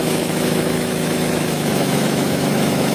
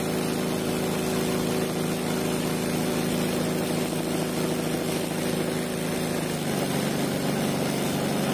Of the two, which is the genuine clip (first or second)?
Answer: second